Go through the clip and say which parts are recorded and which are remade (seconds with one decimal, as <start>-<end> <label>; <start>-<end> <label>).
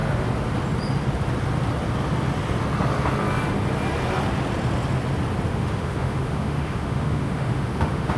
0.0-5.5 recorded; 5.5-8.2 remade